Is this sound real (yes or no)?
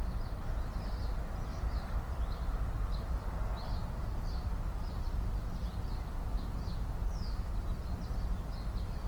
yes